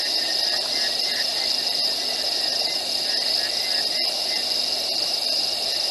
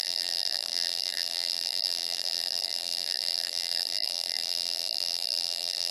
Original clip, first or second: first